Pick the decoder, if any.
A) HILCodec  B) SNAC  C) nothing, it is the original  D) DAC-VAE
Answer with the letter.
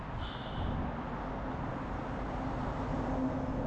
C